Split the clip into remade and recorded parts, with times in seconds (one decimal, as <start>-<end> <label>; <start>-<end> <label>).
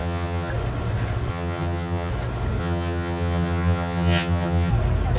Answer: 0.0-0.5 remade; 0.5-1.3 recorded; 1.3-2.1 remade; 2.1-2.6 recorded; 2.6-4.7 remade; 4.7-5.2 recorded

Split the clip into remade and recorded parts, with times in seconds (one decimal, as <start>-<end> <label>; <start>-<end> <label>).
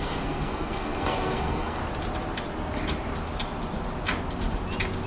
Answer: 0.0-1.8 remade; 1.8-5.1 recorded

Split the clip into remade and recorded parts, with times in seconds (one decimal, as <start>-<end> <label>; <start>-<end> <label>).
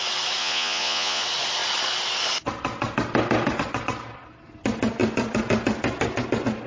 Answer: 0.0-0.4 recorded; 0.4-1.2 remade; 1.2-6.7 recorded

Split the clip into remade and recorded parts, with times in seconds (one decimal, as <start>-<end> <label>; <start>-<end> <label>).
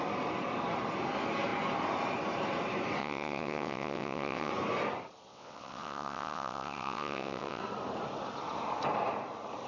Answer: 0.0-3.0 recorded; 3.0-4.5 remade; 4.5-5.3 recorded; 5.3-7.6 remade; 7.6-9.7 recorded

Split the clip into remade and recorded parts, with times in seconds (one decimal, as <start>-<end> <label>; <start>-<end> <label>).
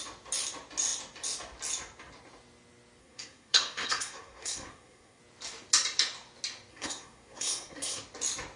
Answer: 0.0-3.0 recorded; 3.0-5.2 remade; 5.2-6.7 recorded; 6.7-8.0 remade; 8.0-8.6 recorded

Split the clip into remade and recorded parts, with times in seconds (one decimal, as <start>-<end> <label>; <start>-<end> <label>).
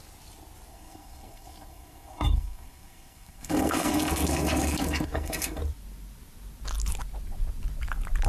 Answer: 0.0-0.7 recorded; 0.7-5.6 remade; 5.6-8.3 recorded